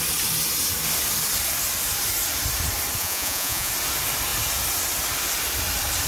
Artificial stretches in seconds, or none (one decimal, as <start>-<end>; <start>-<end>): 3.0-3.7